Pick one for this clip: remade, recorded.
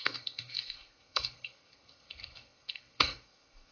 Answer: remade